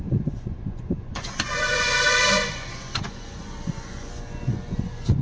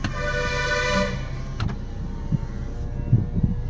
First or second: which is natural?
second